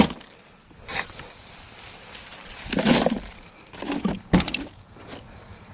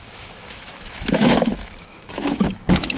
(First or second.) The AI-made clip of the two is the second